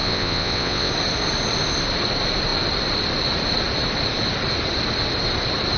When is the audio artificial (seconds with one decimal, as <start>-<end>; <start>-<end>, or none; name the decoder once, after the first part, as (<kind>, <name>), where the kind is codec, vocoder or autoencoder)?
0.0-0.9 (vocoder, WaveNeXt)